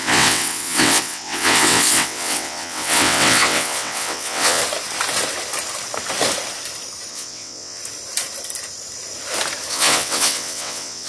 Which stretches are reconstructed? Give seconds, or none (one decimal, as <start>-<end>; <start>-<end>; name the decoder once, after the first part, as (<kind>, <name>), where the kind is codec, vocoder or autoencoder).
0.0-4.6 (vocoder, WaveNeXt); 7.1-7.8; 9.7-11.1